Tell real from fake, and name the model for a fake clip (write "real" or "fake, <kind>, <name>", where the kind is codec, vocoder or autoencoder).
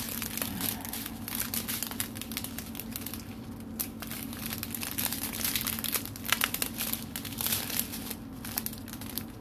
real